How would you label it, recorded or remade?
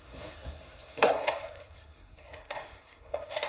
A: remade